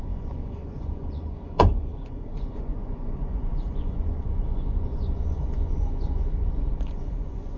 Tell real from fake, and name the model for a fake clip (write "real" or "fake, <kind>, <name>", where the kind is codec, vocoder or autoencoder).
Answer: fake, vocoder, Vocos